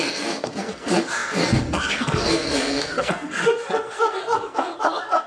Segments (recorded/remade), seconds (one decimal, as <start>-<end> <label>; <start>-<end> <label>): 0.0-5.3 remade

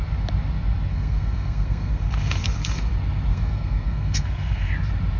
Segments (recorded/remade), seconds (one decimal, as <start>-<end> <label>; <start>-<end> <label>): 0.0-0.9 recorded; 0.9-2.9 remade; 2.9-3.3 recorded; 3.3-4.7 remade; 4.7-5.2 recorded

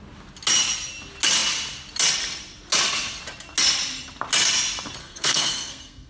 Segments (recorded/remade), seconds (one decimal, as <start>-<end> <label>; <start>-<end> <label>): 0.0-5.0 recorded; 5.0-6.1 remade

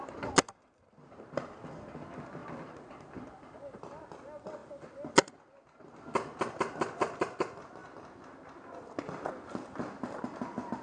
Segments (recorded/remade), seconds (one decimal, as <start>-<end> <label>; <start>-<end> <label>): 0.0-10.8 recorded